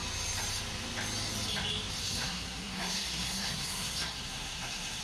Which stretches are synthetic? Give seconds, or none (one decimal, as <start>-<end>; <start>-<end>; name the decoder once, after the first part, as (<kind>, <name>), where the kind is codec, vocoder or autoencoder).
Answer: 2.0-5.0 (codec, SNAC)